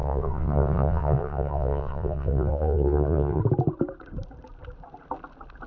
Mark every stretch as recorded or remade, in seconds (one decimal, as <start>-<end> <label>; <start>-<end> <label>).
0.0-3.4 remade; 3.4-5.7 recorded